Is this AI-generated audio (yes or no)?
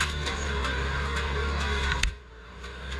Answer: yes